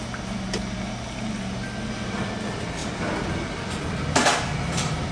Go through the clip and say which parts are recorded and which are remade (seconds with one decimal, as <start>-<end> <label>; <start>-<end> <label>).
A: 0.0-5.1 recorded